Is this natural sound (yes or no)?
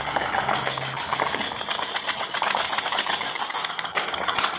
yes